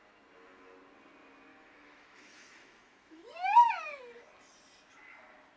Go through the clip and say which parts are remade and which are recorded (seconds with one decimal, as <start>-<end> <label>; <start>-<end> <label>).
0.0-1.5 recorded; 1.5-4.0 remade; 4.0-5.6 recorded